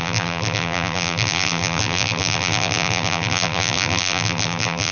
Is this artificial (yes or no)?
yes